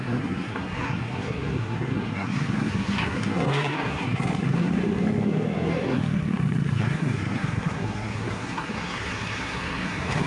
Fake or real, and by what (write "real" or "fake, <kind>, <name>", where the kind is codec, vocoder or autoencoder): fake, codec, SNAC